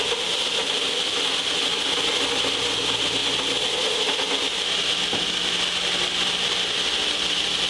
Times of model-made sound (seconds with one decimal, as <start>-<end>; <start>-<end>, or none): none